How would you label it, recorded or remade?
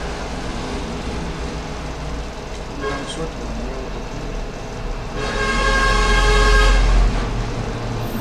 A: recorded